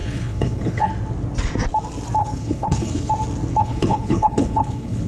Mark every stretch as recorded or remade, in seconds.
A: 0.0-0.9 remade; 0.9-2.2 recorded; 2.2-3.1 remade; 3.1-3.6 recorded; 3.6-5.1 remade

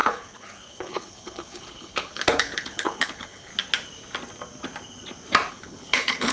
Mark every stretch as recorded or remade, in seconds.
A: 0.0-3.5 remade; 3.5-5.5 recorded; 5.5-6.3 remade

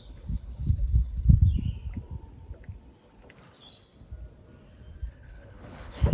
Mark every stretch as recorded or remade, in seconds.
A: 0.0-1.4 remade; 1.4-5.1 recorded; 5.1-6.1 remade

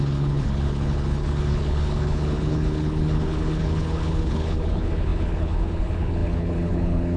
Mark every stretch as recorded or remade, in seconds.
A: 0.0-7.2 remade

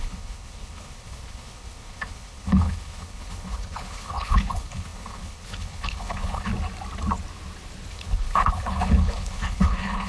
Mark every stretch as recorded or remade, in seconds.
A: 0.0-6.5 remade; 6.5-7.9 recorded; 7.9-10.1 remade

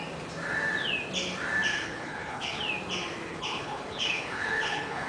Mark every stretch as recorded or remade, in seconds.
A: 0.0-1.7 recorded; 1.7-2.6 remade; 2.6-3.3 recorded; 3.3-5.1 remade